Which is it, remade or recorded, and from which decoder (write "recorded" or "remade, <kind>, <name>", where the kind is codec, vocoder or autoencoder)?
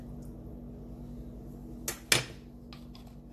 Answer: recorded